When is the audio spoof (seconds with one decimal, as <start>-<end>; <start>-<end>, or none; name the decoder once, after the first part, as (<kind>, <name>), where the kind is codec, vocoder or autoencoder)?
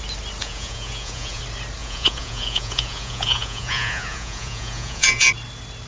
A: 0.4-1.4 (vocoder, Vocos); 1.8-5.3